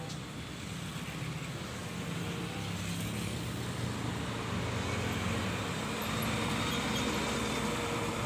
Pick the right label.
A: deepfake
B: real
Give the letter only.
B